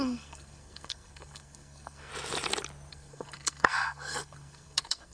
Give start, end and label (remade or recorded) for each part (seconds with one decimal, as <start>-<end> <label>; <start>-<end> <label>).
0.0-2.1 remade; 2.1-2.9 recorded; 2.9-5.1 remade